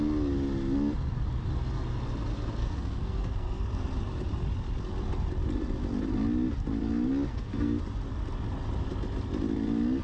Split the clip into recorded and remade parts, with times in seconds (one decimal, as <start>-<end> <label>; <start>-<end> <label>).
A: 0.0-2.6 recorded; 2.6-3.7 remade; 3.7-7.3 recorded; 7.3-7.8 remade; 7.8-10.0 recorded